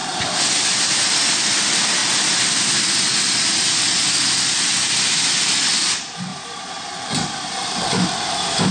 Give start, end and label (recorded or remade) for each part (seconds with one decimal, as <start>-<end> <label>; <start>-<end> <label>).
0.0-0.8 remade; 0.8-6.3 recorded; 6.3-8.7 remade